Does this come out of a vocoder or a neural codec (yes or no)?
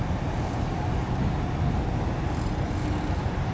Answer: no